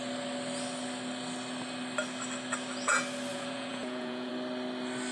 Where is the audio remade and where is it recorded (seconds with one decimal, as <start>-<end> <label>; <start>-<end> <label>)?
0.0-3.3 recorded; 3.3-4.3 remade; 4.3-5.1 recorded